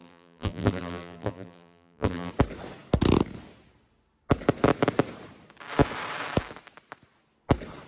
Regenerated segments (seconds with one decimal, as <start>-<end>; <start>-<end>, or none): 0.0-2.3